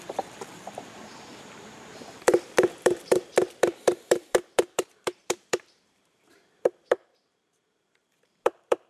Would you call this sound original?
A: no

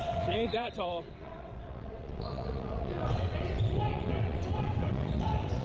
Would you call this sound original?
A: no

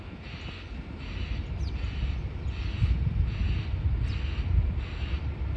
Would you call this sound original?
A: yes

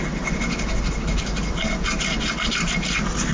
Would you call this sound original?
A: yes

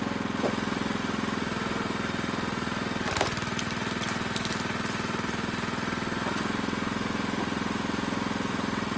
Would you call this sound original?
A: yes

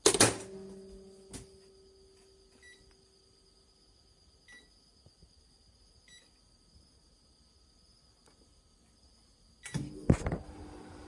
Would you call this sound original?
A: yes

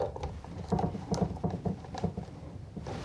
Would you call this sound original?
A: no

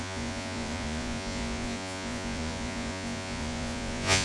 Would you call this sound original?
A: no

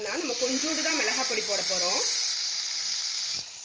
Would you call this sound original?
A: no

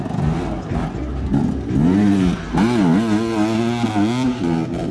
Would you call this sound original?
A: yes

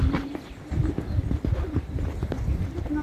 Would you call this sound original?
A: no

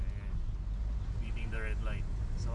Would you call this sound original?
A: yes